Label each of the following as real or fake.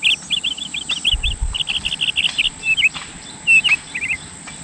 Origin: real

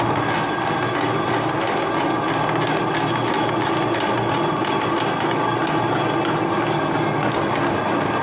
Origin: real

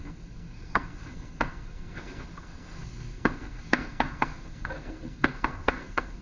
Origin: fake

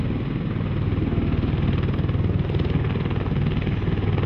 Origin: real